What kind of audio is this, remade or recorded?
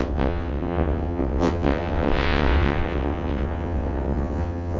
remade